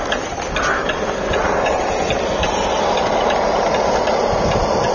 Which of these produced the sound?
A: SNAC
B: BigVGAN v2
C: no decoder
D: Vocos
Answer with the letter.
C